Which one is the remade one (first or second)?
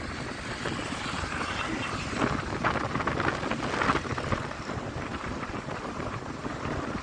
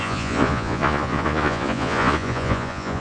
second